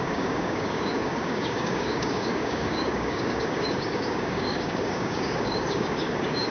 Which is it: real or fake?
fake